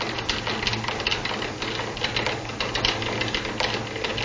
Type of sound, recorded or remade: recorded